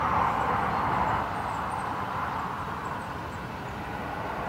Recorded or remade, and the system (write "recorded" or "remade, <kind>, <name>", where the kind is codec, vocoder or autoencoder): recorded